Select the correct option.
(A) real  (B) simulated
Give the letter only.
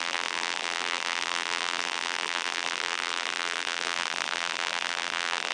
B